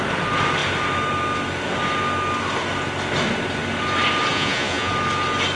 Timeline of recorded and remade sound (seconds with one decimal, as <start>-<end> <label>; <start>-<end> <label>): 0.0-4.3 recorded; 4.3-4.9 remade; 4.9-5.6 recorded